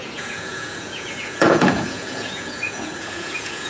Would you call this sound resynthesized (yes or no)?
yes